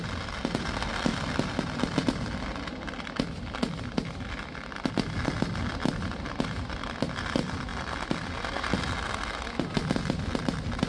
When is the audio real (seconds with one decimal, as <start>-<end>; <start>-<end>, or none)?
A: 0.0-10.9